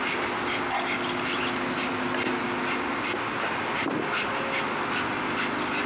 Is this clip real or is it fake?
real